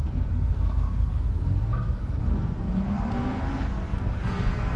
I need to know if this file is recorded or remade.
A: remade